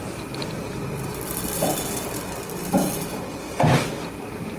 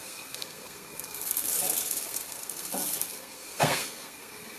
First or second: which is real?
first